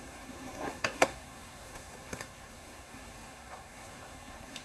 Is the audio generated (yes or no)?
yes